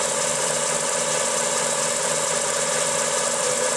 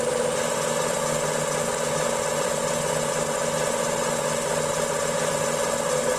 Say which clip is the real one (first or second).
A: second